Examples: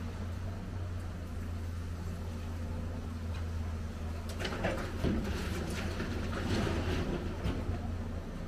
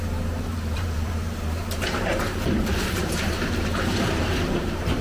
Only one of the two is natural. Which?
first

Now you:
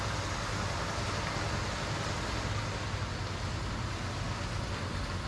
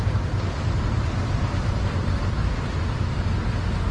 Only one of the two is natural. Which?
first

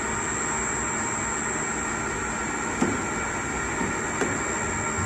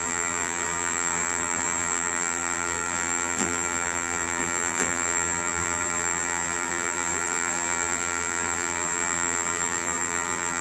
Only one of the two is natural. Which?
first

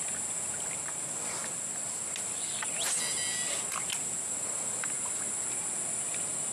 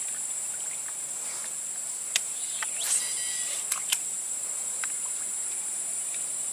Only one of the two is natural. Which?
first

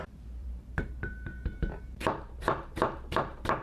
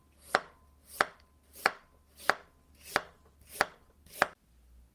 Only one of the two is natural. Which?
second